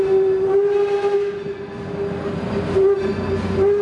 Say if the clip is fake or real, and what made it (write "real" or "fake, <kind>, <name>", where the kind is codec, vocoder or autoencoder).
real